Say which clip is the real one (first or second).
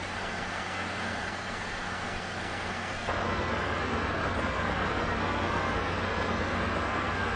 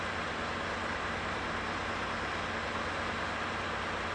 second